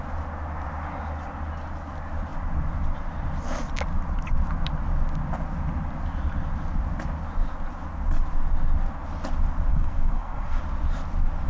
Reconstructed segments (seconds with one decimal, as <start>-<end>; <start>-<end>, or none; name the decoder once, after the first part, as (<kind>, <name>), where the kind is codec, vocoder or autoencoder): 9.7-10.6 (codec, SNAC)